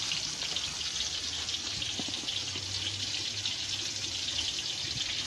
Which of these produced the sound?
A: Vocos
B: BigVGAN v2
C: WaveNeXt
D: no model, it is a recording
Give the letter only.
D